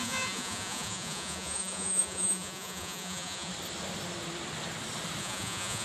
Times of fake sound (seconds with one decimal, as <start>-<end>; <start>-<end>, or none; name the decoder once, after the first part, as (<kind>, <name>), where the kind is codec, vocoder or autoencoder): 0.0-3.5 (vocoder, Vocos); 5.2-5.8